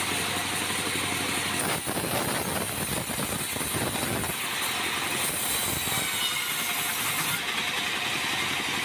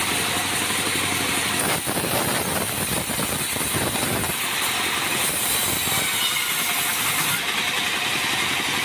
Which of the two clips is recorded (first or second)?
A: first